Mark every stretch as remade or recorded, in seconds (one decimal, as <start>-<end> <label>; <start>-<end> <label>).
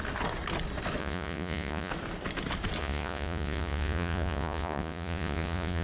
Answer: 0.0-1.0 recorded; 1.0-1.9 remade; 1.9-2.8 recorded; 2.8-5.8 remade